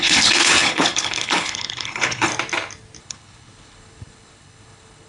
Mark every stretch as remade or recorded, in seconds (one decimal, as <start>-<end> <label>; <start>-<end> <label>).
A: 0.0-2.3 remade; 2.3-3.0 recorded; 3.0-5.1 remade